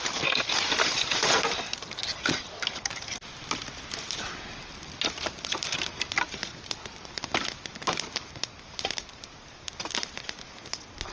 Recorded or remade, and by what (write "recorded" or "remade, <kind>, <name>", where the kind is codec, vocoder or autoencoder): recorded